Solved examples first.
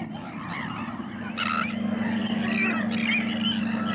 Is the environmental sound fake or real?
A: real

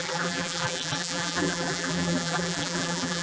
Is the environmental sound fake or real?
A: fake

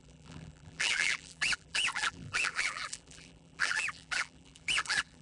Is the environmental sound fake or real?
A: fake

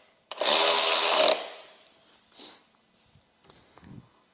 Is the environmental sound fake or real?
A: real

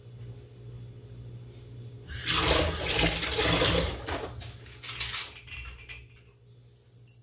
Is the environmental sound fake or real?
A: real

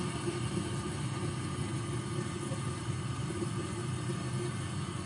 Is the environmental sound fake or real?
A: real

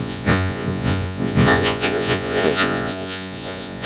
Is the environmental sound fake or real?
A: fake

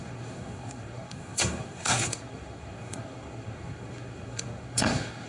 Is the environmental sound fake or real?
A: fake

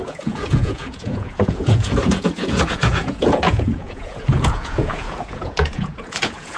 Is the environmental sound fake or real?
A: fake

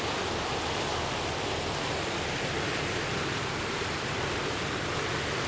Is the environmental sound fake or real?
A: real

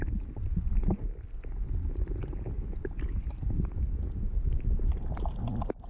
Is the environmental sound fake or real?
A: real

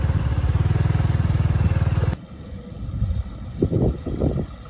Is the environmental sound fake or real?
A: real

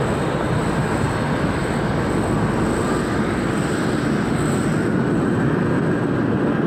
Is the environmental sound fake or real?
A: real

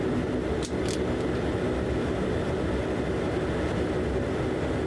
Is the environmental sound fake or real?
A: real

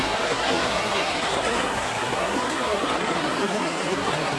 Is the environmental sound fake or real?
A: fake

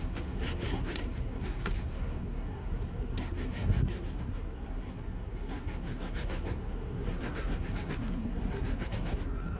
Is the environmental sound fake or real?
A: fake